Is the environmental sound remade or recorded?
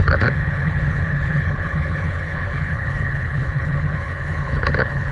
remade